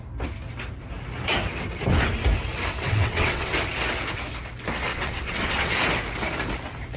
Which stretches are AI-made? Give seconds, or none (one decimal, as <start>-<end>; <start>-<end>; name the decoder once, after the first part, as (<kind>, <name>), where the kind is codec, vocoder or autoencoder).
2.8-3.5 (vocoder, WaveNeXt); 4.9-5.7